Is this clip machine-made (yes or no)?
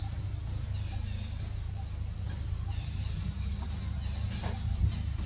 no